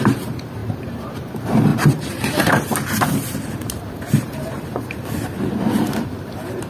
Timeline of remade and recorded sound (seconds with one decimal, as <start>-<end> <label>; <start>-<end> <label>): 0.0-6.7 remade